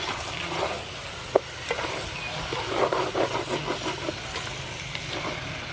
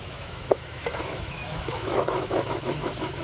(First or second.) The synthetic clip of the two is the second